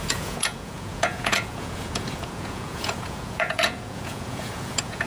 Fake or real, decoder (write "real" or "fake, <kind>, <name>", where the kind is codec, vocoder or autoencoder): fake, vocoder, Vocos